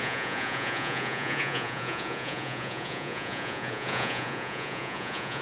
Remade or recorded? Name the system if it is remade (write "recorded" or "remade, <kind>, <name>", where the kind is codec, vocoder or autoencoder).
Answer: remade, vocoder, Vocos